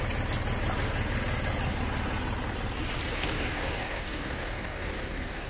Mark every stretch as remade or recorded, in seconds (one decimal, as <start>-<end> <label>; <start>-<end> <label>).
0.0-3.1 recorded; 3.1-5.5 remade